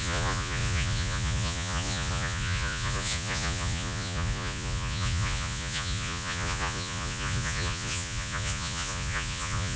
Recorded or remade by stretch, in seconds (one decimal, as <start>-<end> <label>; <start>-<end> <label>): 0.0-9.8 remade